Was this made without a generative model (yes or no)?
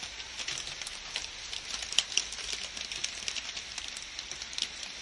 yes